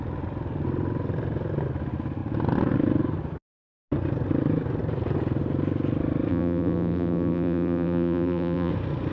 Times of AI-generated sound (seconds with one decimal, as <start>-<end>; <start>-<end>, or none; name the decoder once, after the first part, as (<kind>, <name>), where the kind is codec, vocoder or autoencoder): 6.3-8.7 (vocoder, BigVGAN v2)